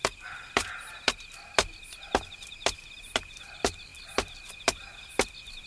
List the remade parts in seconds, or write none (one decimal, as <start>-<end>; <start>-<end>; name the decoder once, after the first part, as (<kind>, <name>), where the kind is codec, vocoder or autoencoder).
none